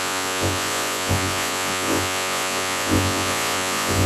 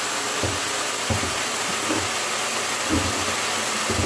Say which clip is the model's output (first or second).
first